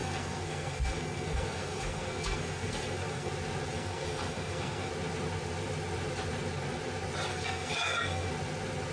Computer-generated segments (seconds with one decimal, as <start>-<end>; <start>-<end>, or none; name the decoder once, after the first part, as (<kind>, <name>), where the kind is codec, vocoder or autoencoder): 0.0-3.3 (codec, SNAC); 3.7-4.9; 7.3-8.3